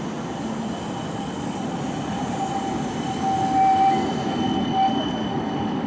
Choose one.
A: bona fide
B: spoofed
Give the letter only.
A